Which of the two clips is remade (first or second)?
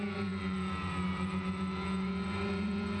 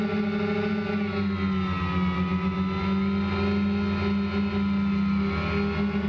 first